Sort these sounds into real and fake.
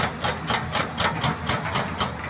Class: real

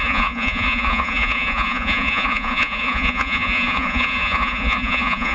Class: fake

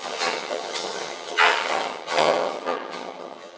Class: fake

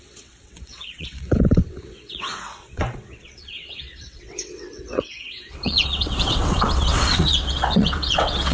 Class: fake